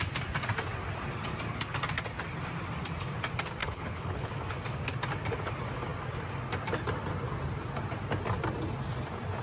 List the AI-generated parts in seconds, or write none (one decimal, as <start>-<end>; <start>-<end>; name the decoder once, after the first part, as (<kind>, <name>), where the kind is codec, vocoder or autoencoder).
3.6-4.3 (codec, HILCodec)